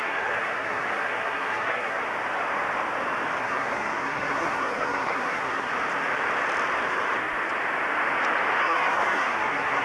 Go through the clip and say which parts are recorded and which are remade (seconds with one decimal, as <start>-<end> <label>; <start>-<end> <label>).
0.0-2.0 remade; 2.0-3.4 recorded; 3.4-5.7 remade; 5.7-8.6 recorded; 8.6-9.8 remade